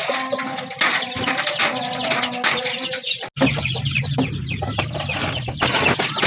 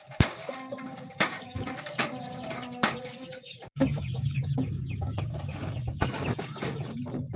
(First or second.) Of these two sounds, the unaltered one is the first